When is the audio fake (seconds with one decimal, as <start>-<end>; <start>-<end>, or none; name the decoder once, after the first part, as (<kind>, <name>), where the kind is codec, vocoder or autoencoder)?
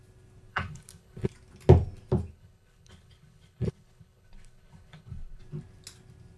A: 0.5-1.3 (codec, HILCodec); 2.3-5.4